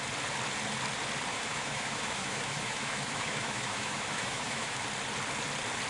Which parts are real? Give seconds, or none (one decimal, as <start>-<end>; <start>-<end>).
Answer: 0.0-1.3; 4.8-5.9